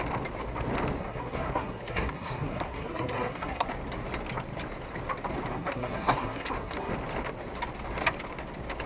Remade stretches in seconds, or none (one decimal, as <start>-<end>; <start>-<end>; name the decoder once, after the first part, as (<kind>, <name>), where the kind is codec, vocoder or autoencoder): 1.0-3.7 (codec, SNAC); 5.5-6.9